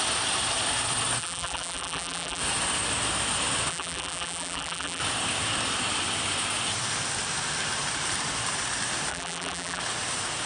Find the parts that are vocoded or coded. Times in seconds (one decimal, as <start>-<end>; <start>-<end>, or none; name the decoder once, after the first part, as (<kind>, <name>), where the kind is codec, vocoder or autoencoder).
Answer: 1.2-2.4 (vocoder, BigVGAN v2); 3.7-5.0; 9.1-9.8